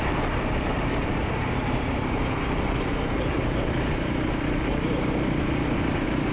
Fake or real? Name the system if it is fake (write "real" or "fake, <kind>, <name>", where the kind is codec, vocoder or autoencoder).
fake, vocoder, BigVGAN v2